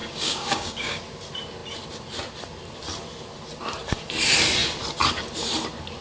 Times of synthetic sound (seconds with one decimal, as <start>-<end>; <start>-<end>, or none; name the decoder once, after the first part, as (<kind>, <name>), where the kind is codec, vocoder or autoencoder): 0.0-1.0 (codec, DAC)